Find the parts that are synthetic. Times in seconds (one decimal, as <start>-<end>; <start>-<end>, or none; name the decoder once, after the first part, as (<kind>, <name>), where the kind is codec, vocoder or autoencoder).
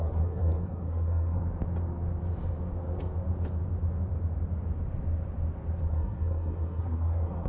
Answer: 0.0-1.4 (codec, SNAC); 5.9-7.5